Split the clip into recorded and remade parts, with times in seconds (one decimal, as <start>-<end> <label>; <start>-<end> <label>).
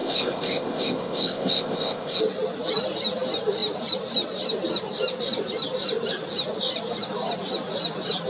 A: 0.0-2.2 remade; 2.2-8.3 recorded